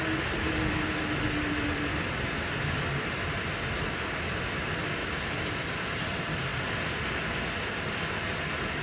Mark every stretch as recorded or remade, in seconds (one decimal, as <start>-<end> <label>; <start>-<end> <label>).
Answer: 0.0-5.0 recorded; 5.0-5.6 remade; 5.6-8.8 recorded

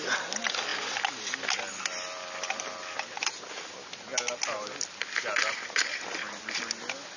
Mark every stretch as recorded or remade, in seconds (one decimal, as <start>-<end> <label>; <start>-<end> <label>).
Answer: 0.0-7.2 recorded

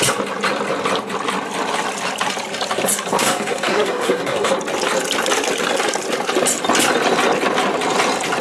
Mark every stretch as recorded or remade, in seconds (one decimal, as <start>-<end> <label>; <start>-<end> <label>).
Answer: 0.0-3.1 recorded; 3.1-4.5 remade; 4.5-8.4 recorded

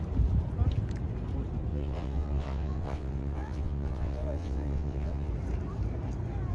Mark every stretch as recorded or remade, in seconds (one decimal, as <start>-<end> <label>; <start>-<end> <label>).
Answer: 0.0-1.7 recorded; 1.7-5.3 remade; 5.3-6.5 recorded